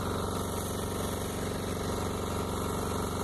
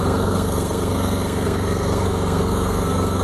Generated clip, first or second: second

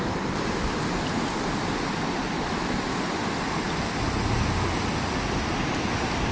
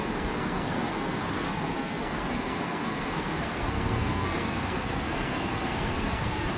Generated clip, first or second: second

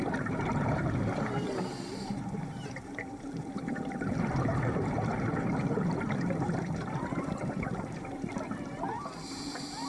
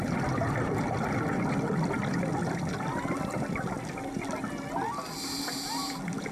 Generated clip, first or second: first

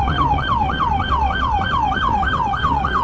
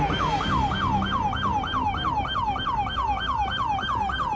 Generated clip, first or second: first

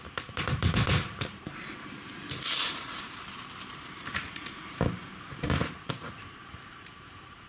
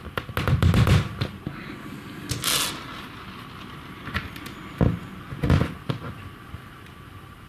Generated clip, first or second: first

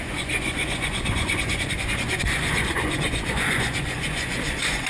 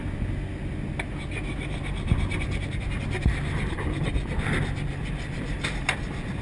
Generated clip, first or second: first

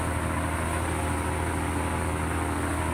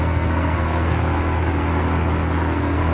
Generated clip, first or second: second